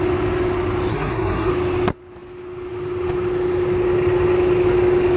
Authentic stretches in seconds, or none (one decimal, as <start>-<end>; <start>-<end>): 0.0-0.9; 1.5-5.2